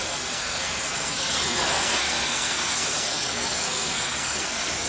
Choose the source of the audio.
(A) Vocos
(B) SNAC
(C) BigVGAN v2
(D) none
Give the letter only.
B